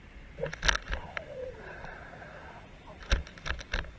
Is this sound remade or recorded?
recorded